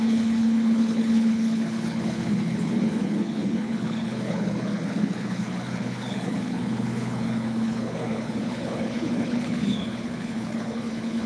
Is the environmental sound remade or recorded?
remade